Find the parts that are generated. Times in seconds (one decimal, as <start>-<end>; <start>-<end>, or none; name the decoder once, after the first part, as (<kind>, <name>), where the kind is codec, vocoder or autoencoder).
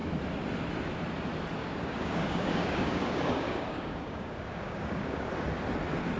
1.6-5.3 (codec, DAC)